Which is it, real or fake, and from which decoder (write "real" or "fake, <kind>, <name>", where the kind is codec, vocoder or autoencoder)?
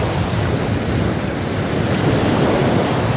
real